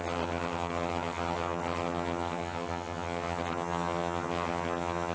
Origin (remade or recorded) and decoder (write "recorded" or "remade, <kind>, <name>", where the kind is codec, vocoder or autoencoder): remade, vocoder, HiFi-GAN